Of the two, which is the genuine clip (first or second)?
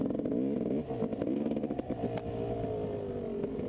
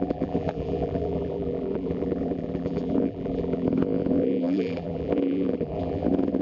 first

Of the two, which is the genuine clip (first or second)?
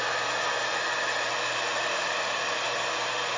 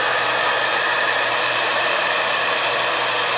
first